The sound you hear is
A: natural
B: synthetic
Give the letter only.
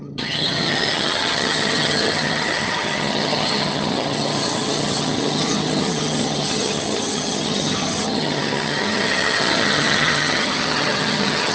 B